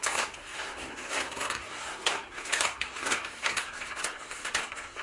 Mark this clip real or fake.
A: fake